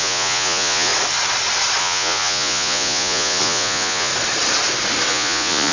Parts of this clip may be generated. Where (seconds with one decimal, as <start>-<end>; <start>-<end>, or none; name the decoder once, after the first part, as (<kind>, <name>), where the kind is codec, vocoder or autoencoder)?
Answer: 0.0-0.9 (vocoder, Vocos); 1.8-4.1; 5.1-5.7